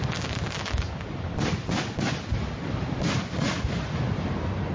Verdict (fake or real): real